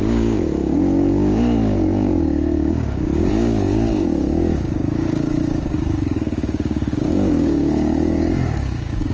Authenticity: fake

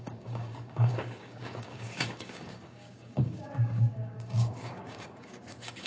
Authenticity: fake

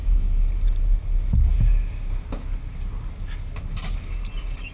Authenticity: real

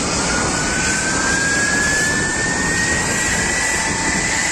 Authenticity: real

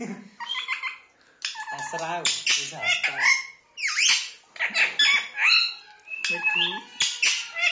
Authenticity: real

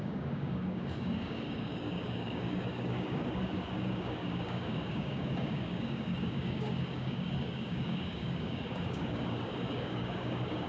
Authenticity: fake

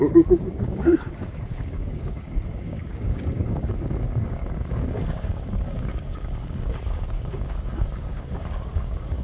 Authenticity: fake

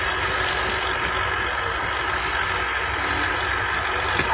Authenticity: real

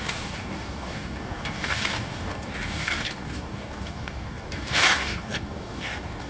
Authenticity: fake